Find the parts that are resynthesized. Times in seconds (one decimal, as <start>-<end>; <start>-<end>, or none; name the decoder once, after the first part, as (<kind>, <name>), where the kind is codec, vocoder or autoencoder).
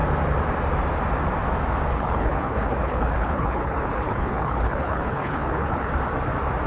1.9-5.9 (codec, HILCodec)